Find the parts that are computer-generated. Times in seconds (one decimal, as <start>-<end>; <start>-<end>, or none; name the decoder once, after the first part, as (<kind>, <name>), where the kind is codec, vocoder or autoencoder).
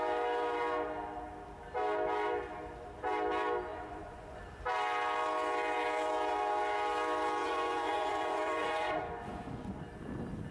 3.7-4.4 (vocoder, Vocos); 7.4-9.8